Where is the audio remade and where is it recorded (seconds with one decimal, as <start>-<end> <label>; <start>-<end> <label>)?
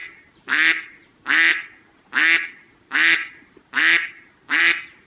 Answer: 0.0-5.1 recorded